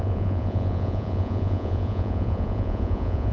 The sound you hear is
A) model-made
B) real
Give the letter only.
A